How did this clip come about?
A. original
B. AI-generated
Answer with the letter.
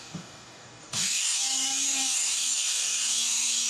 B